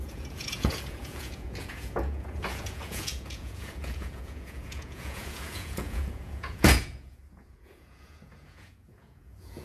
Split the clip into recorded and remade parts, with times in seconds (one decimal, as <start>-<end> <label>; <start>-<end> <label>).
0.0-9.6 remade